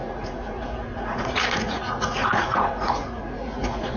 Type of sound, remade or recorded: remade